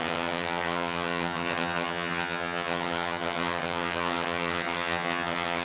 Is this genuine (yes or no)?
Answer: no